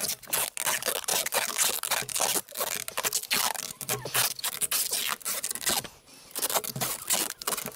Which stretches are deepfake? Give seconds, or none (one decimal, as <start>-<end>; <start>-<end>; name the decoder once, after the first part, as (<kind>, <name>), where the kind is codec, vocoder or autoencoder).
none